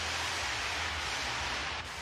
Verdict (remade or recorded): recorded